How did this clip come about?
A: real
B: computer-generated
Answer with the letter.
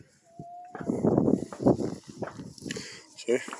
A